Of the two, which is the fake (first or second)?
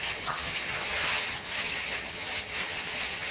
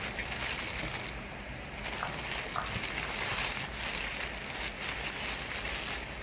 first